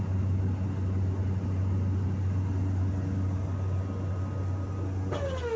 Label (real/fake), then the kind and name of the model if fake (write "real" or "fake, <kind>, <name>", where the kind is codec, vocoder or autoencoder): real